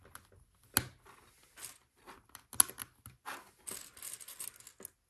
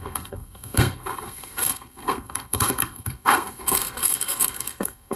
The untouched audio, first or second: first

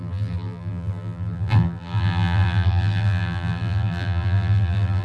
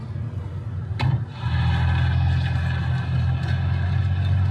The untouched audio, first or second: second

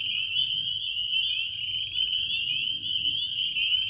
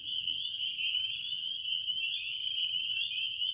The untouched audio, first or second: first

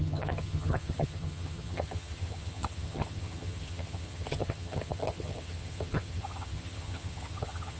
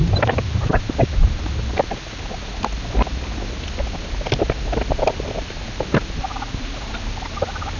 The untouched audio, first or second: second